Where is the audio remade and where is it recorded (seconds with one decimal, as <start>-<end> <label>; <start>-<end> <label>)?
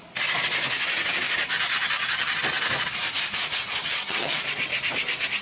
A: 0.0-1.7 recorded; 1.7-2.4 remade; 2.4-3.8 recorded; 3.8-4.4 remade; 4.4-5.4 recorded